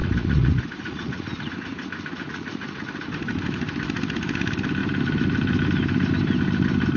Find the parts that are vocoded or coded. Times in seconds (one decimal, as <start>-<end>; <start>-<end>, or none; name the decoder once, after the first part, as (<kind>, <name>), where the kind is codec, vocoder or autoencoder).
0.0-1.5 (vocoder, Vocos); 2.2-2.9